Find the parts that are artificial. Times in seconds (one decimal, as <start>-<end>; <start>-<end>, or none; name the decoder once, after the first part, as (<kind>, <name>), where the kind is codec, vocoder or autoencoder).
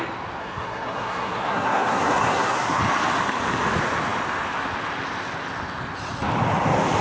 0.4-2.8 (codec, SNAC)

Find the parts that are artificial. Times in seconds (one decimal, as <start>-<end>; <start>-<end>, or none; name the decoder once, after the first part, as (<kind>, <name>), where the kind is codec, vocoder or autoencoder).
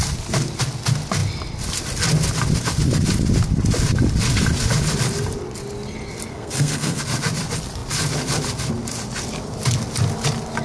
6.3-7.0 (codec, SNAC)